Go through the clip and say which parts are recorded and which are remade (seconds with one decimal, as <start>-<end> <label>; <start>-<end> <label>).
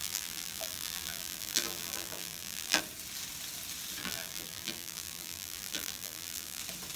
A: 0.0-2.8 remade; 2.8-4.0 recorded; 4.0-6.6 remade; 6.6-7.0 recorded